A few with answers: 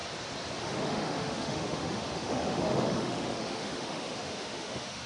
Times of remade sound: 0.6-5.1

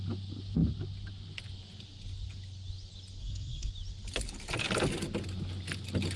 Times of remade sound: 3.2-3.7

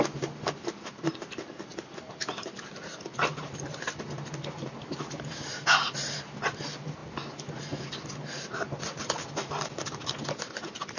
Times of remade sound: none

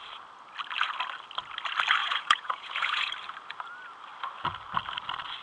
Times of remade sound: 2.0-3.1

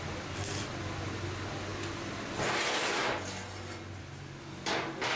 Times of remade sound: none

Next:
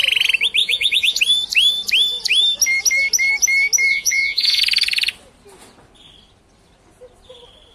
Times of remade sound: 0.6-1.2; 3.9-4.6

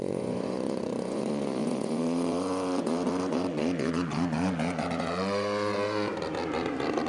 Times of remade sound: 0.0-6.1

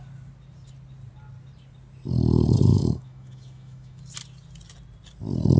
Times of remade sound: 2.7-4.0